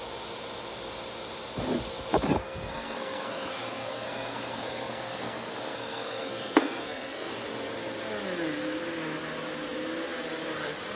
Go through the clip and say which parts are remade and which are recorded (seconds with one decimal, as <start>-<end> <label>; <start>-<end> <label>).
0.0-2.4 recorded; 2.4-7.3 remade; 7.3-11.0 recorded